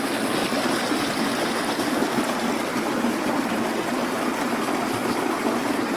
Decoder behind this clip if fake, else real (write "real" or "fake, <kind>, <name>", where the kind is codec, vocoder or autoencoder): real